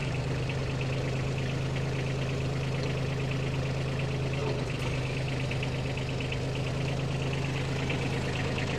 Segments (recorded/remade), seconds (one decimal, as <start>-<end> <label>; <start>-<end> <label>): 0.0-0.6 remade; 0.6-8.8 recorded